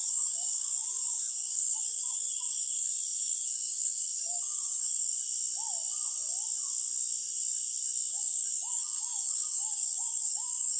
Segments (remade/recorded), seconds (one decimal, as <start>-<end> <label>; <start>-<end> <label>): 0.0-5.1 remade; 5.1-8.1 recorded; 8.1-10.8 remade